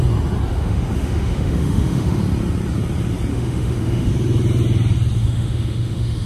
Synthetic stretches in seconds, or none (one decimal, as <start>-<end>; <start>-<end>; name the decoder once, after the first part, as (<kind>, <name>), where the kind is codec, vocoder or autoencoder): 0.5-2.2 (autoencoder, DAC-VAE); 3.3-4.1; 5.2-6.3